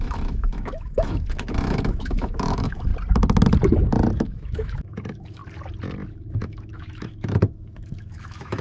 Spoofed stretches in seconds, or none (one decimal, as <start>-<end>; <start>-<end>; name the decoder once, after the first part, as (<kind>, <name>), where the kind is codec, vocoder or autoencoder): 0.0-2.9 (autoencoder, DAC-VAE); 4.1-5.4; 6.1-8.6